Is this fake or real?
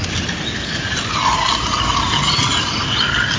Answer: real